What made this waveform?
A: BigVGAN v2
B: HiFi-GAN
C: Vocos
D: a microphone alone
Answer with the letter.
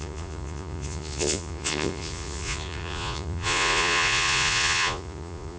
C